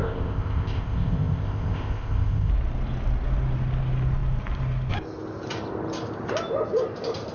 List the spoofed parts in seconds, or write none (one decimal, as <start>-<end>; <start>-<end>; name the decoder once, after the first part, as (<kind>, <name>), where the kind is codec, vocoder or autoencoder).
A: 0.0-2.5 (codec, ZipCodec)